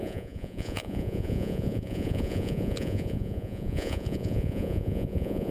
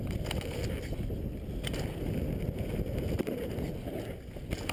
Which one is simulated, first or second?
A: first